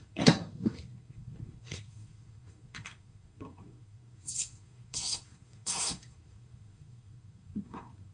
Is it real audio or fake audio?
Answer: fake